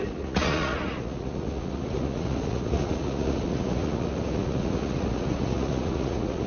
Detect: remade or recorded remade